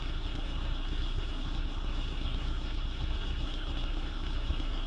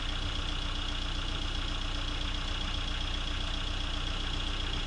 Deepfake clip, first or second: first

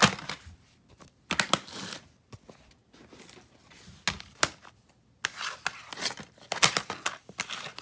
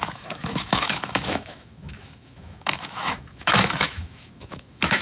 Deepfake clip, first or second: second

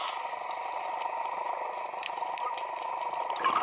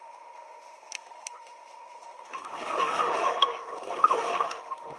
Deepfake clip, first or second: second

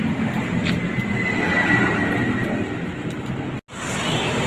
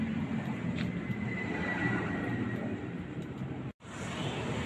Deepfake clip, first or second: second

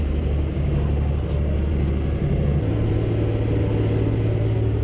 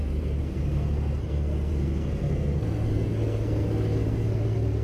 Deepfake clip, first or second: second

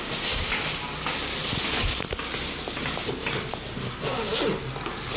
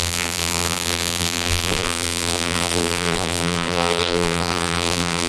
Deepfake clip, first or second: second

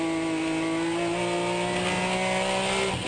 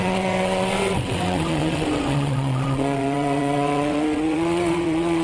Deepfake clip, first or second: second